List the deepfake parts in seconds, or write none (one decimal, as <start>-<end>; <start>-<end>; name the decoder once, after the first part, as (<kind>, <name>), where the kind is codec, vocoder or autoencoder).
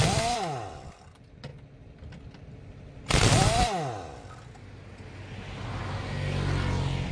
none